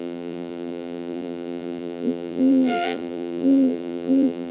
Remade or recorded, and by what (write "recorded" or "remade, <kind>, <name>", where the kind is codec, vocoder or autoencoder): remade, vocoder, BigVGAN v2